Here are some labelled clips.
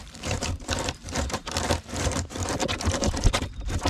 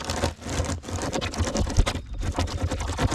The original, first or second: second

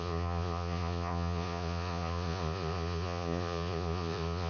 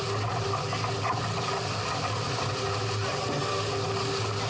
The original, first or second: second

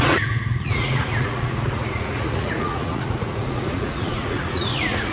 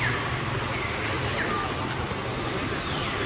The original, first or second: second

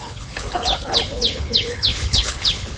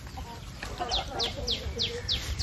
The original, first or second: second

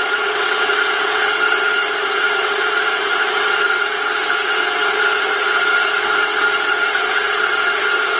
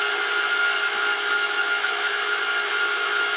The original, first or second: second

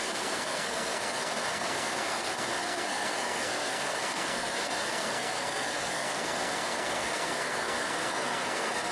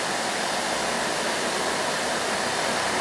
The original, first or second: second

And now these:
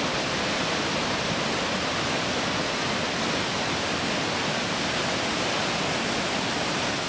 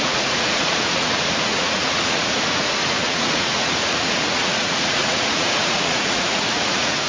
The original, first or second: first